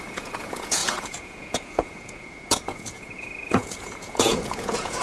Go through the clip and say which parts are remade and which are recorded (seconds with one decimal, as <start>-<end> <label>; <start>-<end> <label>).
0.0-5.0 remade